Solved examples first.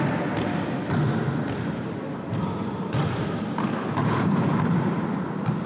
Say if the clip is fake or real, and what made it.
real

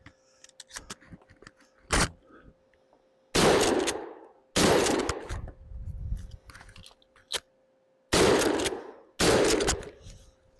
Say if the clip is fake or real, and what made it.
real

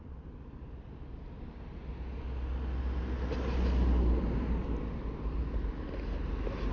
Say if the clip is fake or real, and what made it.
real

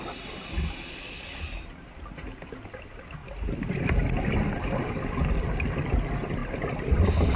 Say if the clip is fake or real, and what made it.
real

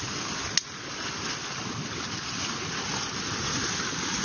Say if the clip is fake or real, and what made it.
real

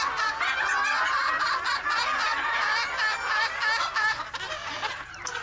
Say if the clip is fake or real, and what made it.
real